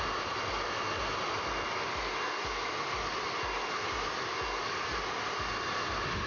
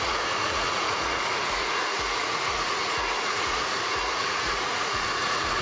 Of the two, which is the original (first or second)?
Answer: first